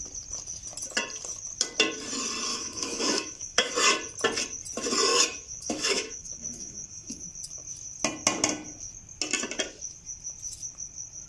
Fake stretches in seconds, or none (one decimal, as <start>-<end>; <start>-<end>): 2.5-3.7; 5.1-7.2